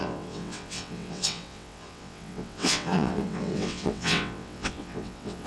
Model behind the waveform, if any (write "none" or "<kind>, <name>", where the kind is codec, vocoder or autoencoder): vocoder, WaveNeXt